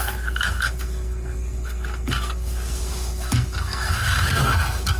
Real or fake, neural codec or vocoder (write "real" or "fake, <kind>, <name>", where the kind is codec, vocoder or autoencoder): fake, codec, SNAC